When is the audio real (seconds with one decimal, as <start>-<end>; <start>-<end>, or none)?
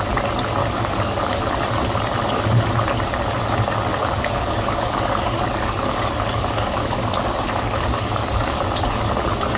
0.0-0.6; 1.5-2.2; 2.7-3.9; 8.6-9.6